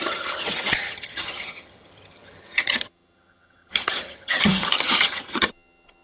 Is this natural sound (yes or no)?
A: no